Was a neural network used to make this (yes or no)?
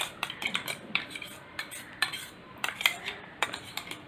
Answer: yes